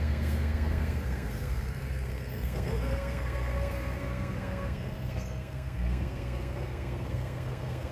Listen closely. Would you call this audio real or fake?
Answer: fake